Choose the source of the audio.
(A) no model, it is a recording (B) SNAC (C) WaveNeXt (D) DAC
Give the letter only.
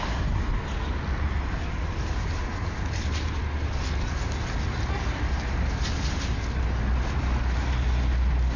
A